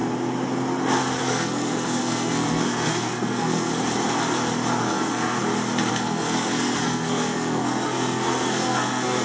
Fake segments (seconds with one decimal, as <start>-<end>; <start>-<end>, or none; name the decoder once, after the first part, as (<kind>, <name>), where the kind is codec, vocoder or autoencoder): 1.2-3.7 (codec, SNAC); 4.8-5.4; 5.9-9.2